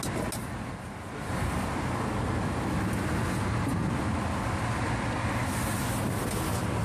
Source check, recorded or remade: recorded